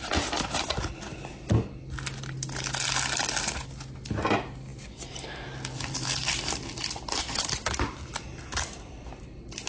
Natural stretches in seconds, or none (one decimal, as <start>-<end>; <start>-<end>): 0.0-9.7